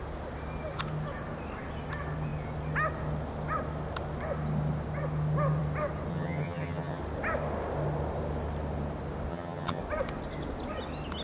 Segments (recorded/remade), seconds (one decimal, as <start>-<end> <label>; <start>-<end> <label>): 0.0-6.1 recorded; 6.1-7.0 remade; 7.0-9.3 recorded; 9.3-9.8 remade; 9.8-11.2 recorded